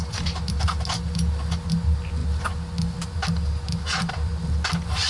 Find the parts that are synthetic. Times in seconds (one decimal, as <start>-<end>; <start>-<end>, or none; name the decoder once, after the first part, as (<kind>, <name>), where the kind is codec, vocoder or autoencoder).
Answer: none